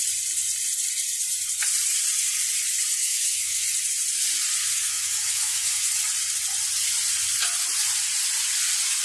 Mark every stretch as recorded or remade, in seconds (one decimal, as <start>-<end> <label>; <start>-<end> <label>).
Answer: 0.0-3.0 recorded; 3.0-3.6 remade; 3.6-4.6 recorded; 4.6-5.9 remade; 5.9-9.0 recorded